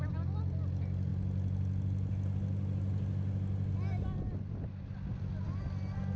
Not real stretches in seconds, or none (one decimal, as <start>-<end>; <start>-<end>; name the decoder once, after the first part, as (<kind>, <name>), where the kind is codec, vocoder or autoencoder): none